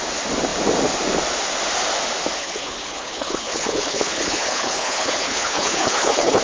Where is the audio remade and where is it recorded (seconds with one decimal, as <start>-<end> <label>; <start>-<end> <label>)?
0.0-2.4 recorded; 2.4-6.4 remade